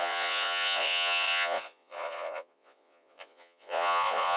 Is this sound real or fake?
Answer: fake